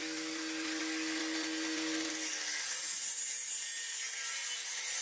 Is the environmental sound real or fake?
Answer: real